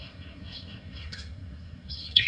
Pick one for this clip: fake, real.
fake